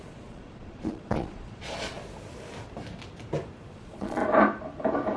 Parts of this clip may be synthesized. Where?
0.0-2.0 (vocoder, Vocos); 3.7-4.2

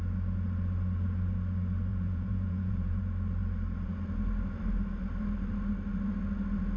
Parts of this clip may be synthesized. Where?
1.9-3.0 (vocoder, Vocos)

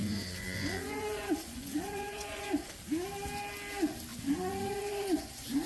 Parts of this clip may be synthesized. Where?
0.0-2.7 (vocoder, Vocos); 4.1-5.7

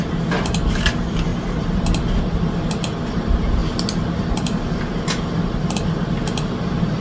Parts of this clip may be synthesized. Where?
none

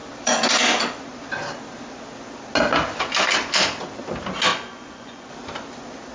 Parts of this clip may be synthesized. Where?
4.5-5.3 (vocoder, Vocos)

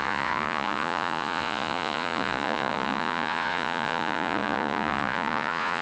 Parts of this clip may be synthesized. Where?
0.0-5.8 (vocoder, Vocos)

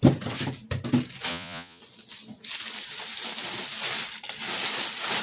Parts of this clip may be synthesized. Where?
1.3-1.8 (vocoder, Vocos)